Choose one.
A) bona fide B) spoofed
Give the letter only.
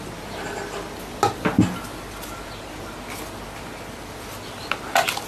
A